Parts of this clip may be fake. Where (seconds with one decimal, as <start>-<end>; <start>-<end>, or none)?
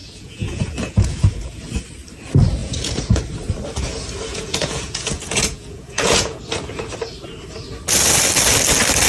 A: 0.0-1.6; 2.6-3.2; 4.3-6.4